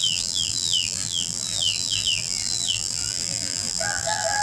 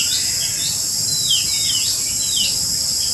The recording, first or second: second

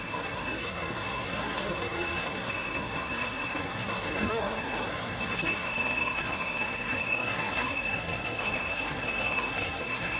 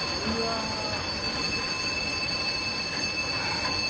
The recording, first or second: second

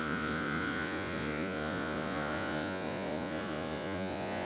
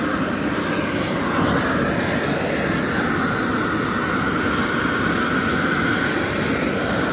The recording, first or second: second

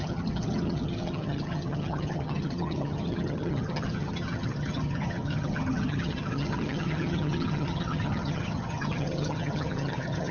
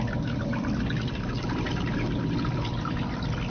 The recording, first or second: second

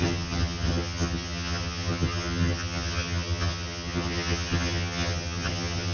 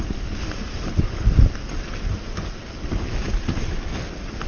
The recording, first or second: second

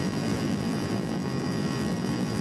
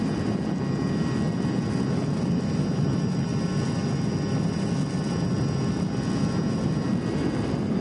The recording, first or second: second